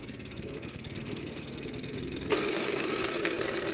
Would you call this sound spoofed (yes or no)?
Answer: yes